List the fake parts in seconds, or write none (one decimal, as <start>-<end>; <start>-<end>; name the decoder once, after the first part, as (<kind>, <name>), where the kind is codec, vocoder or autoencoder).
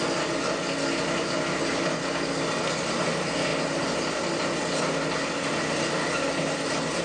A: none